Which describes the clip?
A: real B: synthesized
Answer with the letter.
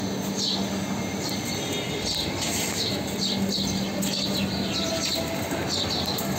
A